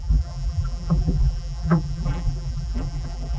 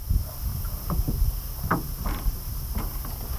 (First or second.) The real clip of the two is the second